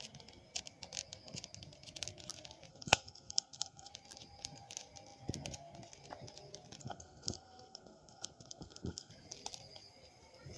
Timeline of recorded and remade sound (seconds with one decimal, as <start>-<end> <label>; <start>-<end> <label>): 0.0-2.7 recorded; 2.7-3.9 remade; 3.9-6.8 recorded; 6.8-9.1 remade; 9.1-10.6 recorded